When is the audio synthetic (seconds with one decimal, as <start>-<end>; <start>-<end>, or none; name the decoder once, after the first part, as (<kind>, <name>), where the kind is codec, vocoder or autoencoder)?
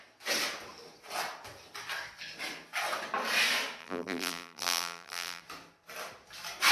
3.8-5.4 (vocoder, BigVGAN v2)